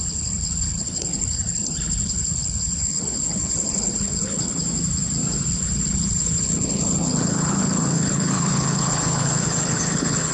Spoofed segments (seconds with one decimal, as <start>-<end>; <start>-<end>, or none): 0.0-4.6; 5.5-10.3